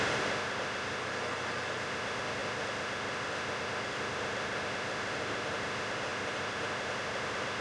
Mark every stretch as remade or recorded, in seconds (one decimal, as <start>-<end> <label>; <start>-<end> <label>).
0.0-1.0 remade; 1.0-1.8 recorded; 1.8-7.6 remade